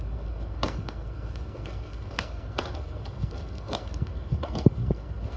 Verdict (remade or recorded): remade